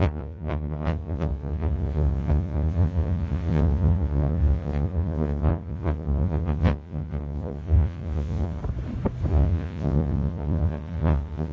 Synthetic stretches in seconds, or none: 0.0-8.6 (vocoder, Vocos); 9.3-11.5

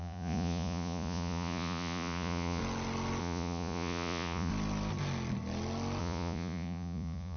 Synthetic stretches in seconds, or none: 0.0-2.6 (vocoder, Vocos); 3.2-4.5; 6.0-7.4